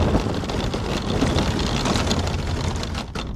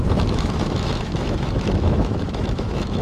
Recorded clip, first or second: first